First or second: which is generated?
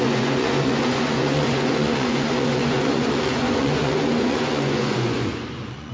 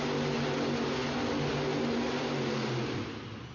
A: first